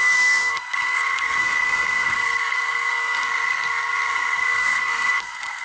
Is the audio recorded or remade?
remade